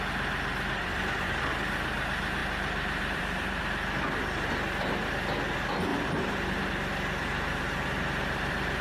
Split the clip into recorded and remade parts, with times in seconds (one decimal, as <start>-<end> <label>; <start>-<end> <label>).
0.0-2.4 recorded; 2.4-3.6 remade; 3.6-5.9 recorded; 5.9-6.7 remade; 6.7-7.2 recorded; 7.2-8.8 remade